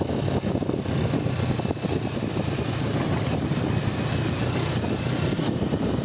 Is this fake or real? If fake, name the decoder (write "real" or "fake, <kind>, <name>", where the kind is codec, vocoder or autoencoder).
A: real